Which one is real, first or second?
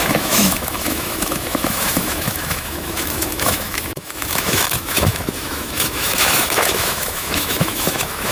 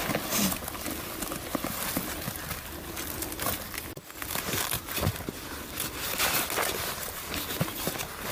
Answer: second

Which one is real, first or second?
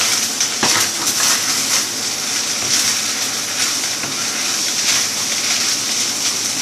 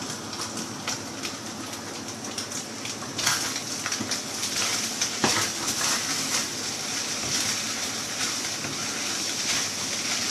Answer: first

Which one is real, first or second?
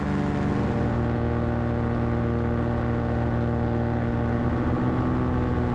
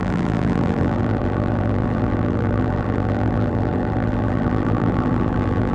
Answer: first